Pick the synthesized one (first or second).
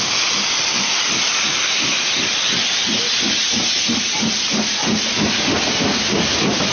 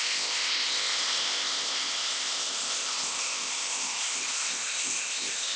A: second